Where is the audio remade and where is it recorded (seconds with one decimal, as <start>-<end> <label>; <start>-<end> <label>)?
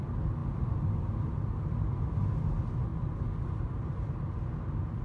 0.0-5.0 recorded